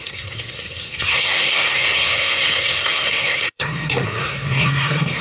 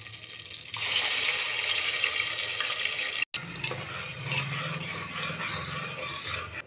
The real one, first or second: second